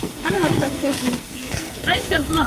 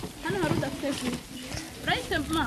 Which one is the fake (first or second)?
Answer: first